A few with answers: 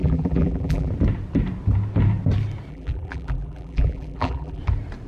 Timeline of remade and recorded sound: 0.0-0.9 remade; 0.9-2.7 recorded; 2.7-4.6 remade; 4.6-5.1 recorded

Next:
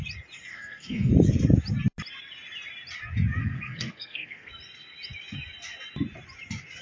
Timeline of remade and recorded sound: 0.0-0.5 recorded; 0.5-1.1 remade; 1.1-3.4 recorded; 3.4-4.5 remade; 4.5-6.8 recorded